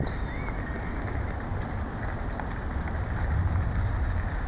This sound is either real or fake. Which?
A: real